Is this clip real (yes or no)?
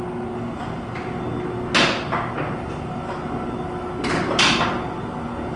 yes